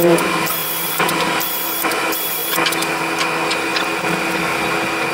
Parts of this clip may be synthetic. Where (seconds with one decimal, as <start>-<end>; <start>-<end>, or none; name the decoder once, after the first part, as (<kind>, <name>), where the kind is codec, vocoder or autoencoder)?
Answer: 0.0-2.4 (vocoder, BigVGAN v2)